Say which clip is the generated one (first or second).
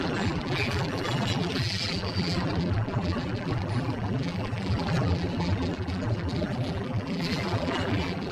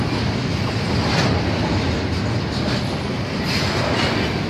first